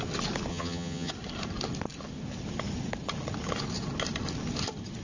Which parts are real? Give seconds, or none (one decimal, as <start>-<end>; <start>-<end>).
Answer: 0.0-0.5; 1.1-5.0